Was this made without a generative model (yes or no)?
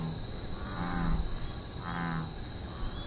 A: yes